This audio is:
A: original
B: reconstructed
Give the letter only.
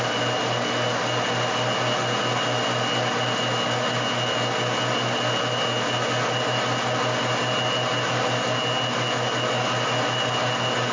A